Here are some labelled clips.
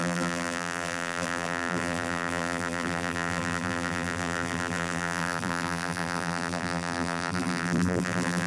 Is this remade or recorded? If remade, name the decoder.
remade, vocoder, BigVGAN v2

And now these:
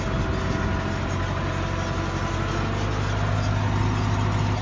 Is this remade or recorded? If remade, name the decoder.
recorded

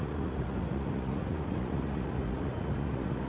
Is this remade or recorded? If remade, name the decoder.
remade, vocoder, Vocos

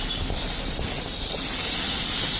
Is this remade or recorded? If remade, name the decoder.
recorded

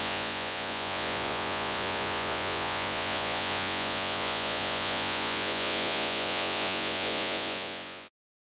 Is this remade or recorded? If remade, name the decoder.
remade, vocoder, Vocos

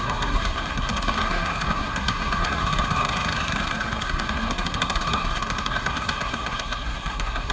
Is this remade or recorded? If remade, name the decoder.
remade, codec, SNAC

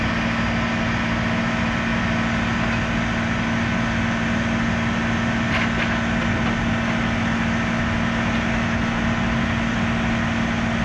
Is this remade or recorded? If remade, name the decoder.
recorded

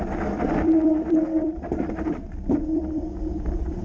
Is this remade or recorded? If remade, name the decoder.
remade, vocoder, BigVGAN v2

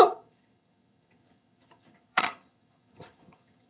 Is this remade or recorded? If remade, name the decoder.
remade, vocoder, HiFi-GAN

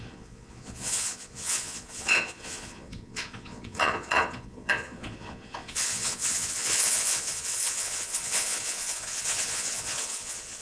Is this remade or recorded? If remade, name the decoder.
remade, vocoder, Vocos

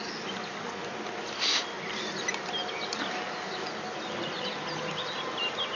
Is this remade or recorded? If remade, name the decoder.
recorded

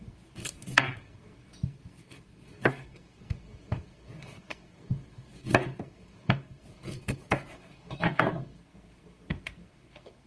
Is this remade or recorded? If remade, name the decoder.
remade, codec, SNAC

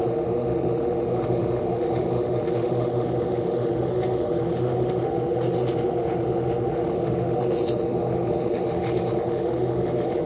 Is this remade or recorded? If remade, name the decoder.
remade, autoencoder, DAC-VAE